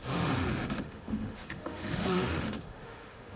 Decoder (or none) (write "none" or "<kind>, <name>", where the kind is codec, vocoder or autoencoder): autoencoder, DAC-VAE